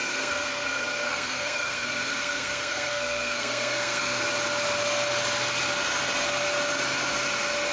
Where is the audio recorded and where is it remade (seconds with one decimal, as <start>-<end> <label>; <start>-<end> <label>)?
0.0-4.2 remade; 4.2-7.7 recorded